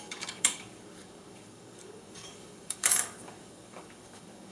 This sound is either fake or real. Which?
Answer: fake